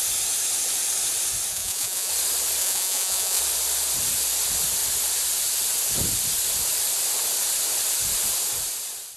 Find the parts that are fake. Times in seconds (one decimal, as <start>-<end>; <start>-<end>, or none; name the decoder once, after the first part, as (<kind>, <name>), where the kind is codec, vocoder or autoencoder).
1.5-2.1 (vocoder, Vocos); 2.6-3.4